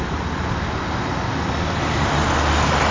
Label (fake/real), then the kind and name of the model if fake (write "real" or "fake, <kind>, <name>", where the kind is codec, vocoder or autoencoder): real